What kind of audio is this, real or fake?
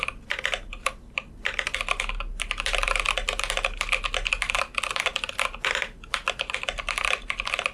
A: real